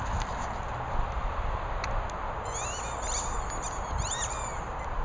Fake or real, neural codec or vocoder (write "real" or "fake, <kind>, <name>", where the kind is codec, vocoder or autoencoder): real